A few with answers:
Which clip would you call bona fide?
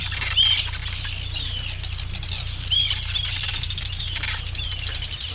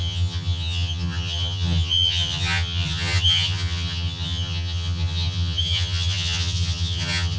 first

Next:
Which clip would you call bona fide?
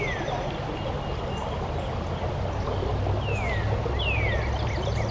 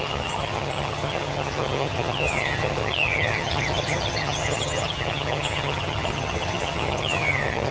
first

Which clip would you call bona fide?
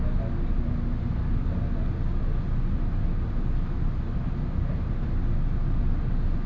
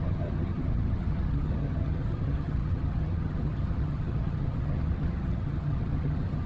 first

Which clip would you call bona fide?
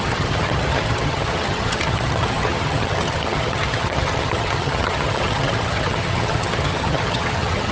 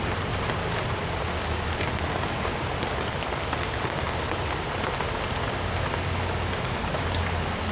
second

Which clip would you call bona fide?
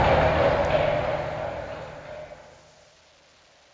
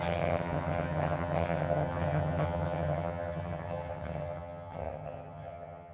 first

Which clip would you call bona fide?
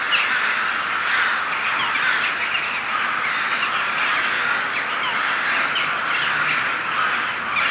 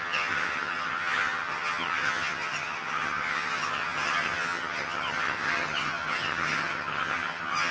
first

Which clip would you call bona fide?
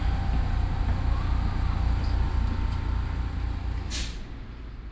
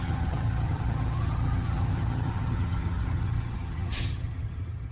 first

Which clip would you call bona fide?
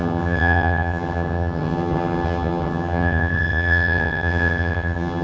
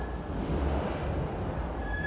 second